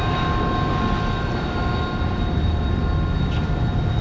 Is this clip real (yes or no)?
yes